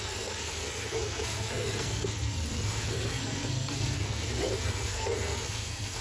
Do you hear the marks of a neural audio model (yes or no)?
yes